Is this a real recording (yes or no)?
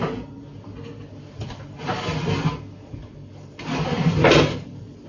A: yes